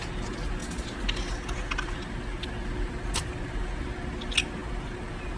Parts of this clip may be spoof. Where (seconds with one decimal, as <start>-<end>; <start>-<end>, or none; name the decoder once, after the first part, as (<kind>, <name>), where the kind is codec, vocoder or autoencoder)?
none